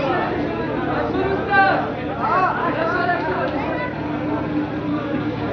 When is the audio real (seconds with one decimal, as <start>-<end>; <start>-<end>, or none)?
0.0-2.6; 3.4-4.9